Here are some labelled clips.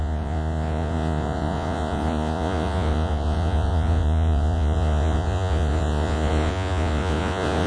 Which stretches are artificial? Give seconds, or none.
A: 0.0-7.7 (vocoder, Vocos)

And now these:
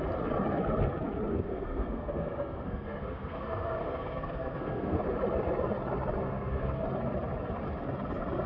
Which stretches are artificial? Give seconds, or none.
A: 1.3-5.0 (codec, SNAC); 6.2-6.8

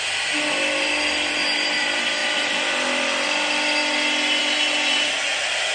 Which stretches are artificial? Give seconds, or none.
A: none